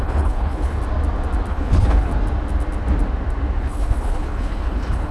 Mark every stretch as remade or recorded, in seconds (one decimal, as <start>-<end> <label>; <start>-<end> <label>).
0.0-0.8 remade; 0.8-1.5 recorded; 1.5-2.1 remade; 2.1-3.6 recorded; 3.6-5.1 remade